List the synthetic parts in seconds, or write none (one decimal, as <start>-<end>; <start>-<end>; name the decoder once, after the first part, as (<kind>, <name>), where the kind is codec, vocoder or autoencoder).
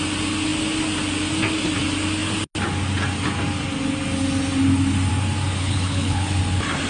5.6-6.4 (codec, HILCodec)